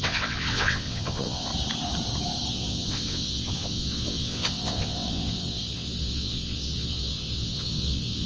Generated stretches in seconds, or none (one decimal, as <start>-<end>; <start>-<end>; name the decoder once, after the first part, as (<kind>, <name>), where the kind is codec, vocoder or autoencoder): 0.0-1.5 (vocoder, WaveNeXt); 2.5-8.3